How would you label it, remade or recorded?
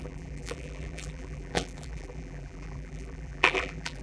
remade